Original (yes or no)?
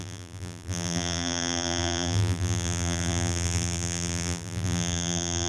no